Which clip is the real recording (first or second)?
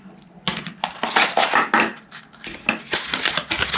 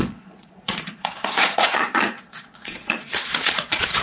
first